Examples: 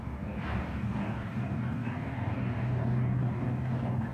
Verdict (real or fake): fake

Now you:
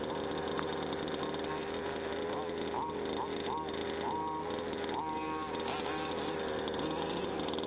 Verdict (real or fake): real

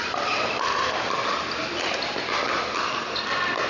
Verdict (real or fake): real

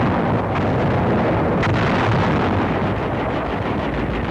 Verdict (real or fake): real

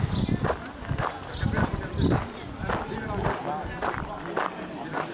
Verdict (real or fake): real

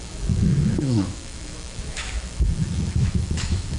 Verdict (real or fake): fake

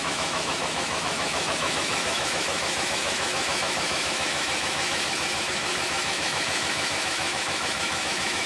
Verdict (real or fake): fake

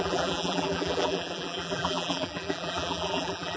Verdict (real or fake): fake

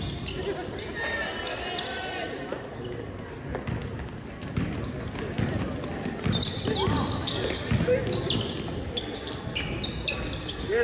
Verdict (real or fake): real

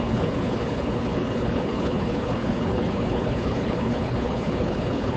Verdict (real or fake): fake